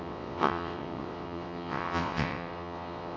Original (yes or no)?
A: no